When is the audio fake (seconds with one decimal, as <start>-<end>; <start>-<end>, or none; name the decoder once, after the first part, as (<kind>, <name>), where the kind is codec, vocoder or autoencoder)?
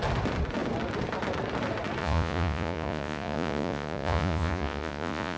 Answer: 2.0-5.4 (vocoder, Vocos)